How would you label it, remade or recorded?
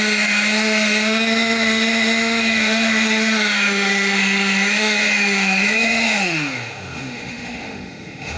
remade